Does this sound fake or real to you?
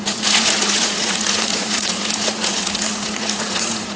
fake